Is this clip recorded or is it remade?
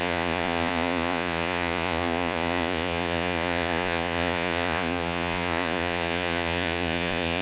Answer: remade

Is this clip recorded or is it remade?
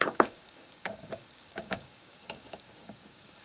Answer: remade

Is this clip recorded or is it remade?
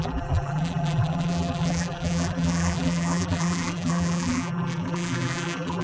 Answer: remade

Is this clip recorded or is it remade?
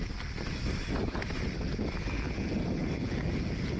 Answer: recorded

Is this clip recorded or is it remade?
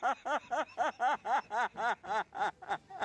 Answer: recorded